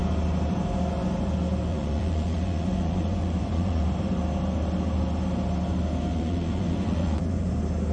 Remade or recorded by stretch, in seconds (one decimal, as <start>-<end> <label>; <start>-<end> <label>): 0.0-1.7 recorded; 1.7-3.8 remade; 3.8-6.1 recorded; 6.1-7.5 remade; 7.5-7.9 recorded